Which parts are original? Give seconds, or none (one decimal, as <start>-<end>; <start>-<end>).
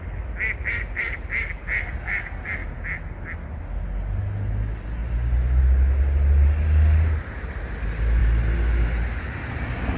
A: 0.0-10.0